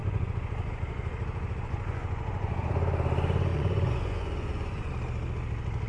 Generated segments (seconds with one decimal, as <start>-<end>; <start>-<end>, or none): 0.0-2.7; 3.5-4.9